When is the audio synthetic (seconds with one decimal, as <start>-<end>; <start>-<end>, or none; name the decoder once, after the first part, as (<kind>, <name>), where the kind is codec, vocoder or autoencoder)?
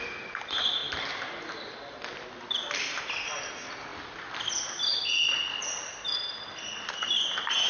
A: none